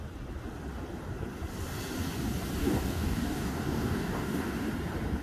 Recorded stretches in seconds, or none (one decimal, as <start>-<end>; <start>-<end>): 0.0-2.6; 4.7-5.2